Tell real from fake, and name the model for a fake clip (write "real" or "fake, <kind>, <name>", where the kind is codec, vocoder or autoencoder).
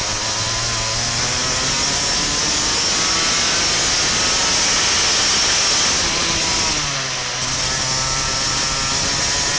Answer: real